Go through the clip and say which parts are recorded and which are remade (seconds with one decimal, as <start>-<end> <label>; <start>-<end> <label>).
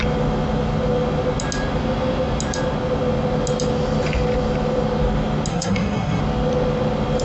0.0-5.5 recorded; 5.5-6.2 remade; 6.2-7.2 recorded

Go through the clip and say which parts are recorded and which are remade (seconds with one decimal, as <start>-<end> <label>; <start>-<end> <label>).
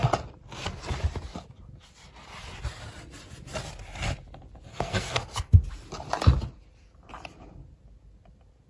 0.0-4.7 recorded; 4.7-5.6 remade; 5.6-8.7 recorded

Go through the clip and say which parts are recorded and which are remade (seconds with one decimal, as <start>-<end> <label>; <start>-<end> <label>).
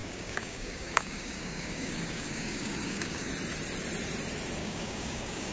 0.0-3.3 remade; 3.3-4.6 recorded; 4.6-5.5 remade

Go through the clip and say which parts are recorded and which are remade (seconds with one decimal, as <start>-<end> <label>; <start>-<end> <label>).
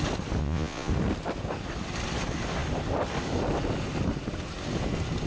0.0-0.4 recorded; 0.4-0.9 remade; 0.9-5.3 recorded